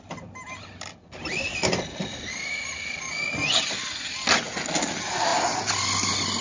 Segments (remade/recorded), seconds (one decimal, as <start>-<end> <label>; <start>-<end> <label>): 0.0-6.4 recorded